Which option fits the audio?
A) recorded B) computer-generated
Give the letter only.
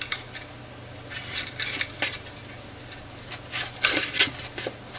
A